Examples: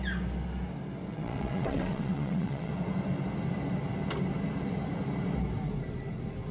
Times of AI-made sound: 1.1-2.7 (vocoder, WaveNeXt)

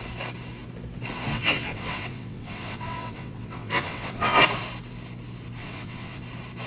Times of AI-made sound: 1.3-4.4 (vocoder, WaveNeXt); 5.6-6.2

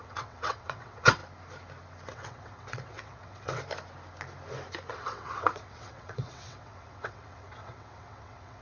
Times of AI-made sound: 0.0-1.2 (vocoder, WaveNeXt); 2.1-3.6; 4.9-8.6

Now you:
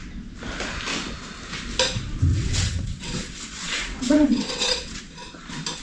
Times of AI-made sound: 2.3-5.0 (vocoder, WaveNeXt)